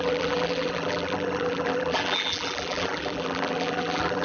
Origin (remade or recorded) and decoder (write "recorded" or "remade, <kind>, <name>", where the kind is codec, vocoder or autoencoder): remade, vocoder, BigVGAN v2